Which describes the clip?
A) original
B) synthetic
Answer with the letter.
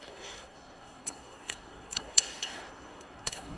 B